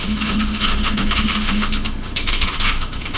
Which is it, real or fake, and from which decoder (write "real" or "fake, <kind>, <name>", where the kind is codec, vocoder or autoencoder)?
fake, autoencoder, DAC-VAE